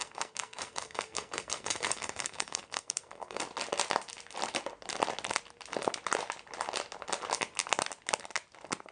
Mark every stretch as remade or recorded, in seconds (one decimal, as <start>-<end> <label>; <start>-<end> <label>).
0.0-3.4 remade; 3.4-8.9 recorded